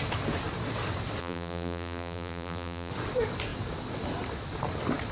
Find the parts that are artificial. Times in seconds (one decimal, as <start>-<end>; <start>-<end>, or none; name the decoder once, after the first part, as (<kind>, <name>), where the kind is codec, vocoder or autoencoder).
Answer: 1.2-2.9 (vocoder, BigVGAN v2)